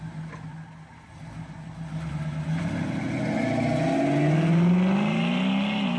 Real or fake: real